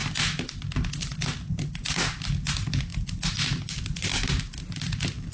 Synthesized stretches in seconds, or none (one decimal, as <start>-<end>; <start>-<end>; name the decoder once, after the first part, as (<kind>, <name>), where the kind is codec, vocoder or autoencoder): none